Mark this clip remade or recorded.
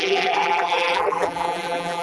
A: remade